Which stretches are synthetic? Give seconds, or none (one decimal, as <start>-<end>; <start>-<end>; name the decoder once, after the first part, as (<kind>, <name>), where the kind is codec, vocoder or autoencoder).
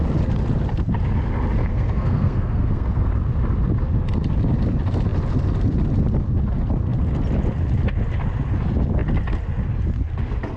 1.7-3.1 (codec, SNAC)